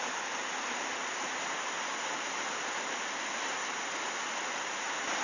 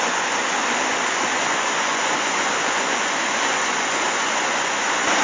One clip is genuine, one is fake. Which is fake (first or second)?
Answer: second